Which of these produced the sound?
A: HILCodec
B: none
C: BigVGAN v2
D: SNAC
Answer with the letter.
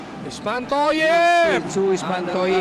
C